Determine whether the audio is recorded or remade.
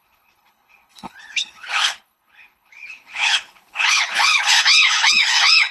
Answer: remade